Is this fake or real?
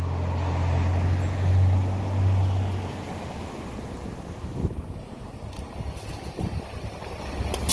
real